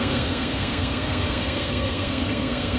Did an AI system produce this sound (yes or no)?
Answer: yes